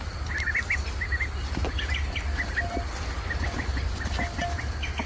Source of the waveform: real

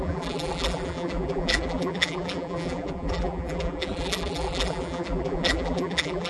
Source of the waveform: fake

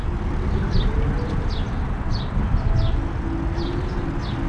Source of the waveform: real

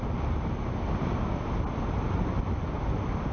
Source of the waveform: real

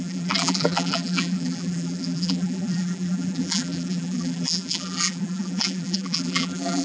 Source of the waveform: fake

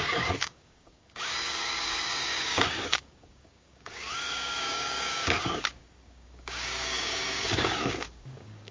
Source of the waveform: fake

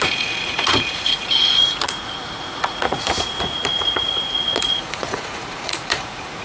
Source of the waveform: fake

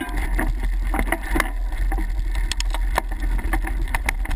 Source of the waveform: real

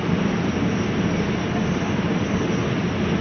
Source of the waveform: real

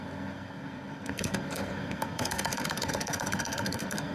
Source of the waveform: fake